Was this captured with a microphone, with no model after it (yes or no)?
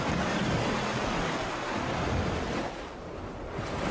yes